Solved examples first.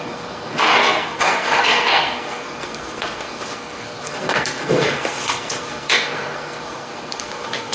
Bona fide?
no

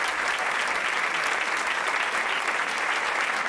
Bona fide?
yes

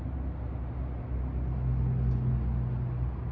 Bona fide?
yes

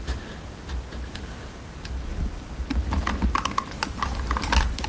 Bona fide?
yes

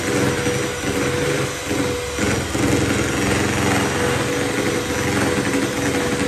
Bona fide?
yes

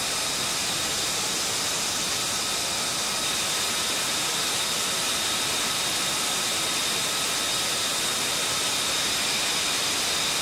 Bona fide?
yes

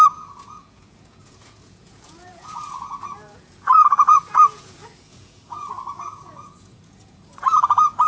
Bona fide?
no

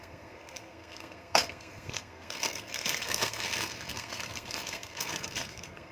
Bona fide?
no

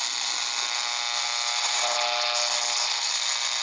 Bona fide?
yes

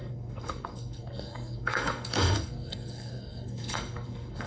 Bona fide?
no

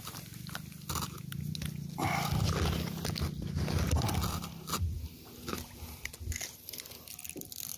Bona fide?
yes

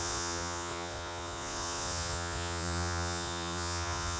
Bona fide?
no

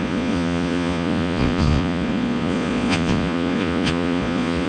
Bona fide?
no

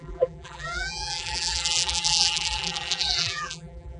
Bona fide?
no